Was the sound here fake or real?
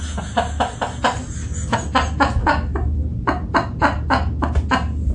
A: real